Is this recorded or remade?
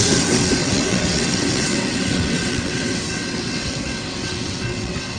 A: remade